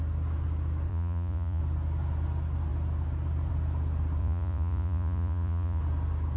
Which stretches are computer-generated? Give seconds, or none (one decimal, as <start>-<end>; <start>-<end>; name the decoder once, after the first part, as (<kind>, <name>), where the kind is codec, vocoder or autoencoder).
0.9-1.6 (vocoder, Vocos); 4.2-5.8